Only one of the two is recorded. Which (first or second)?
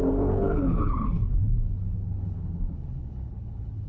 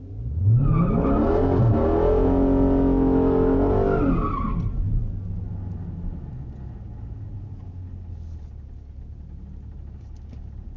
second